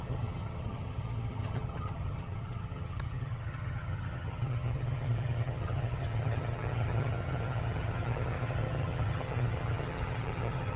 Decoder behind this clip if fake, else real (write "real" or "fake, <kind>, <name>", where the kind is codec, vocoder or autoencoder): fake, vocoder, HiFi-GAN